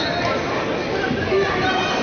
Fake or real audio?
real